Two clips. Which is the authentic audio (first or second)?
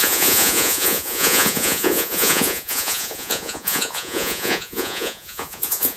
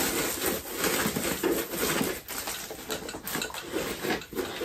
second